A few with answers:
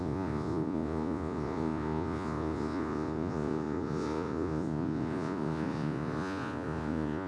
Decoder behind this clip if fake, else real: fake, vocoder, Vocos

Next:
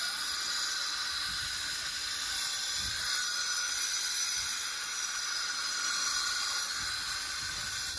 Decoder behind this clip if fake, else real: real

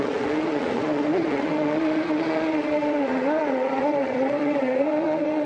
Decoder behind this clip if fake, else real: fake, vocoder, Vocos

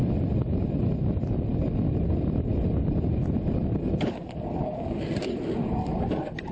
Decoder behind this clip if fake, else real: real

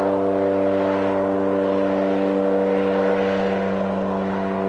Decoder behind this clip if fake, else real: real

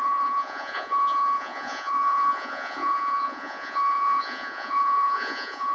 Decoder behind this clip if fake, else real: fake, vocoder, Vocos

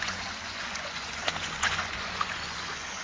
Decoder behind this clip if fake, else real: fake, vocoder, Vocos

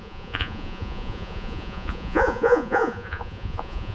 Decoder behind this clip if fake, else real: fake, vocoder, Vocos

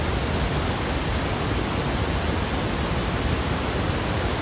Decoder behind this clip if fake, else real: real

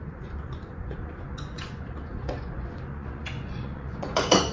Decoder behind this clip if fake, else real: fake, vocoder, Vocos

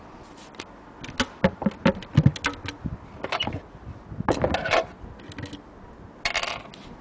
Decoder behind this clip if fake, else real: real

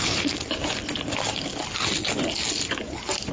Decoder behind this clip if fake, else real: real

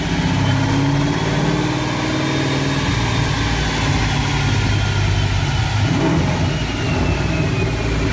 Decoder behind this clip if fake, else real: real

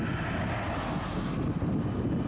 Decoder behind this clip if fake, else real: real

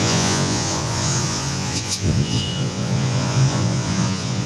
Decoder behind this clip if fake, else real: fake, vocoder, Vocos